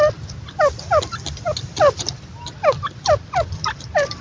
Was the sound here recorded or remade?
recorded